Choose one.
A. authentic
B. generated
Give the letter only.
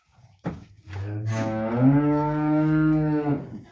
B